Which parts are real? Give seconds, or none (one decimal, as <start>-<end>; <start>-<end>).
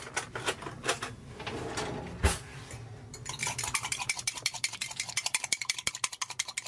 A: 0.0-3.4; 5.9-6.7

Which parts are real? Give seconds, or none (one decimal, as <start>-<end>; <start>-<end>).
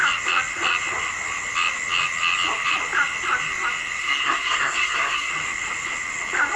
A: 0.0-4.0; 5.3-6.6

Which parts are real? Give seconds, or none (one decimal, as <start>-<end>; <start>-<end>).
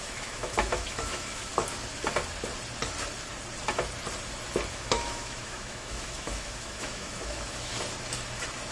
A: 1.5-4.7; 7.7-8.7